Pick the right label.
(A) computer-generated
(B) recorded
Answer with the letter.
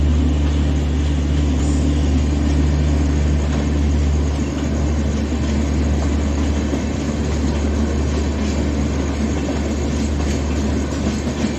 B